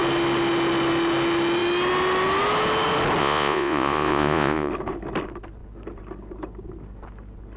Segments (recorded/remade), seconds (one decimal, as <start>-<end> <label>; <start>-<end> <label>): 0.0-3.2 recorded; 3.2-4.7 remade; 4.7-7.6 recorded